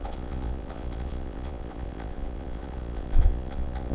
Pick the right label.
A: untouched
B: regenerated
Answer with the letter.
B